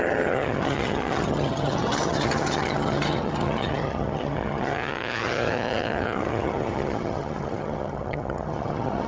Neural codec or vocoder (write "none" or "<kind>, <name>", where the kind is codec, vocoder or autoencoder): vocoder, HiFi-GAN